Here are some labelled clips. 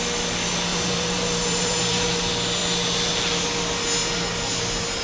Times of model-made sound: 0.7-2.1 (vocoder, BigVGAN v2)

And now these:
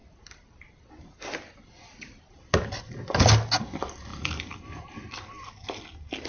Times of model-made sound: 4.1-4.6 (vocoder, BigVGAN v2)

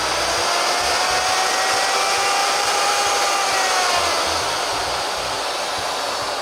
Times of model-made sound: 2.4-3.0 (vocoder, BigVGAN v2); 4.8-5.4

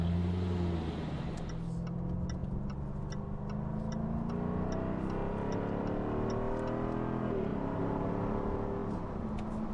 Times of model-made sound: 7.5-8.1 (vocoder, BigVGAN v2)

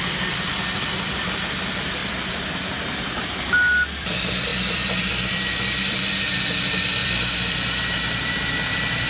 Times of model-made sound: 0.0-2.0 (vocoder, BigVGAN v2); 4.0-9.1

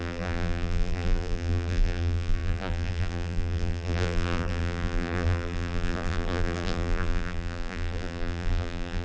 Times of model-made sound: 0.0-9.0 (vocoder, BigVGAN v2)

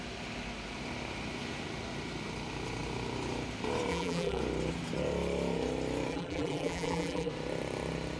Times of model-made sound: 3.9-4.4 (vocoder, BigVGAN v2); 6.1-7.3

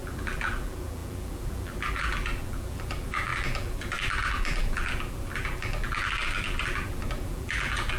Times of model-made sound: 0.0-8.0 (vocoder, BigVGAN v2)